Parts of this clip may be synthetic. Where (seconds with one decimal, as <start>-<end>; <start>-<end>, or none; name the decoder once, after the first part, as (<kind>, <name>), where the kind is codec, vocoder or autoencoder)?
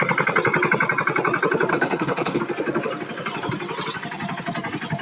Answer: 1.7-2.4 (codec, SNAC)